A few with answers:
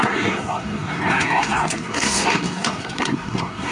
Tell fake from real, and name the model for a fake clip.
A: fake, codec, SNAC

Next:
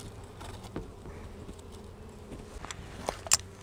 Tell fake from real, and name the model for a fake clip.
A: real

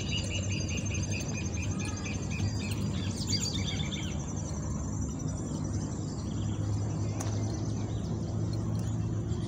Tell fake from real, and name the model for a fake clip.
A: real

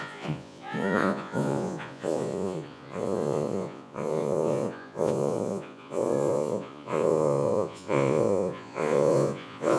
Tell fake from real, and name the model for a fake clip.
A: fake, vocoder, Vocos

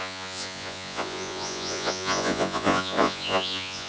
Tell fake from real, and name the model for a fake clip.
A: fake, vocoder, Vocos